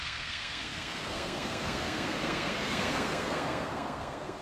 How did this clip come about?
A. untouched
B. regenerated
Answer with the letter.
B